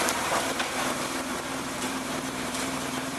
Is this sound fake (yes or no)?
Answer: yes